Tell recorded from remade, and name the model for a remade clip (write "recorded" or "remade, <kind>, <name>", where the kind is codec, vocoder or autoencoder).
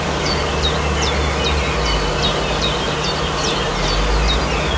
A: recorded